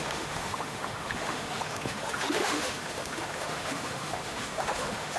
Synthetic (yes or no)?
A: yes